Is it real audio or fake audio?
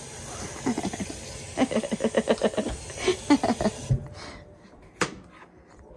real